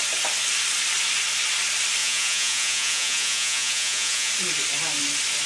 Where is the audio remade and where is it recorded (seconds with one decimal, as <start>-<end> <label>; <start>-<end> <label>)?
0.0-2.0 recorded; 2.0-4.3 remade; 4.3-5.5 recorded